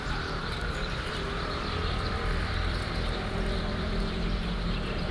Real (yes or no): no